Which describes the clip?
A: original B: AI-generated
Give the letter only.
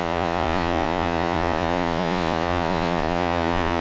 B